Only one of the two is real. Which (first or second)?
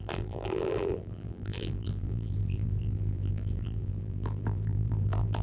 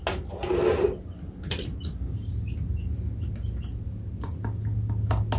second